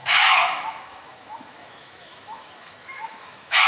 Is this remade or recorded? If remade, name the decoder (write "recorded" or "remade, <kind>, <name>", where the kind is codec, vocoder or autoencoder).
remade, autoencoder, DAC-VAE